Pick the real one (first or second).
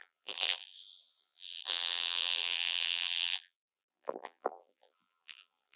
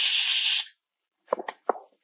second